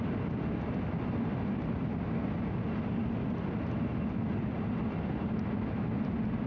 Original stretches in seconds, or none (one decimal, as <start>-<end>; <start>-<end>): 0.0-1.3; 1.8-6.5